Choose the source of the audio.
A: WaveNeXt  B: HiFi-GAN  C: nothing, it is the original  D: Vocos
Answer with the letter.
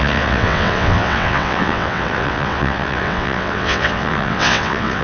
A